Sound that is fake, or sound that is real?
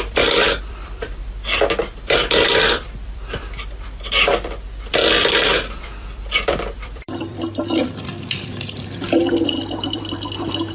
fake